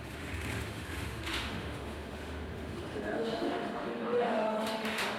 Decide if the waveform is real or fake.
fake